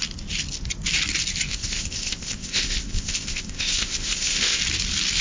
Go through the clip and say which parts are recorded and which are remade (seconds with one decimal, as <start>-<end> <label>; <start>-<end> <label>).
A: 0.0-1.5 recorded; 1.5-4.6 remade; 4.6-5.2 recorded